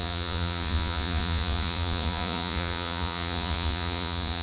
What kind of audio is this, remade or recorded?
remade